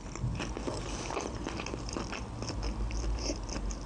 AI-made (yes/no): no